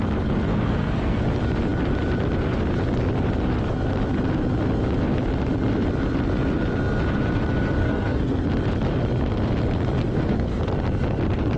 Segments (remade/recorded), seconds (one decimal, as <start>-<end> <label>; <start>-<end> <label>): 0.0-0.5 recorded; 0.5-1.2 remade; 1.2-7.8 recorded; 7.8-8.4 remade; 8.4-10.0 recorded; 10.0-10.6 remade; 10.6-11.6 recorded